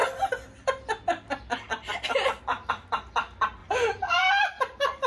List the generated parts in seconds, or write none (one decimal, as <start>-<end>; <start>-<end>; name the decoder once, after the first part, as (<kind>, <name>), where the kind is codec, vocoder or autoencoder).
none